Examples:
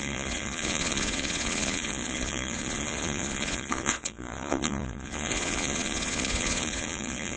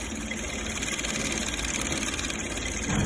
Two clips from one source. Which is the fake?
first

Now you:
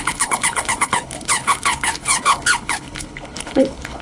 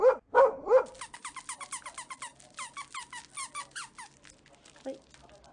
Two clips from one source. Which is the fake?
first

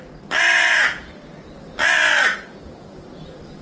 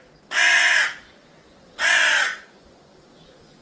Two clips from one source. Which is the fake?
second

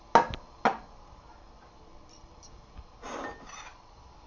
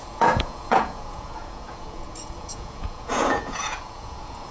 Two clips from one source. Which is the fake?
second